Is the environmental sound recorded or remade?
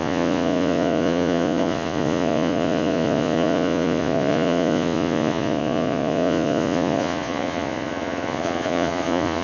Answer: remade